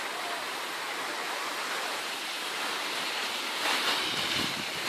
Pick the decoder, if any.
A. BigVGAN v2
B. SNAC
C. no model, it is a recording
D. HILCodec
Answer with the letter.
A